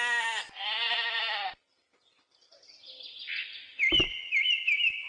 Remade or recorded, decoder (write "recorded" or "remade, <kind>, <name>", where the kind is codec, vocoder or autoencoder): recorded